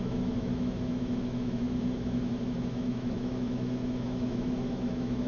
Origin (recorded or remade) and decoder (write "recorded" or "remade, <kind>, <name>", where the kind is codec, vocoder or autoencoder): remade, autoencoder, DAC-VAE